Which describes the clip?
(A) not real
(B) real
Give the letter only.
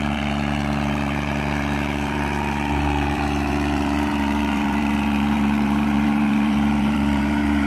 A